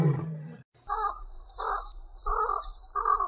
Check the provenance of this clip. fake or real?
real